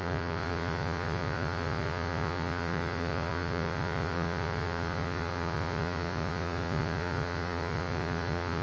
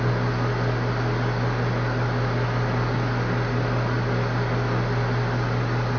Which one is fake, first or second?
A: first